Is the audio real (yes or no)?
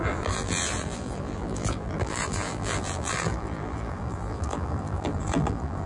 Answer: no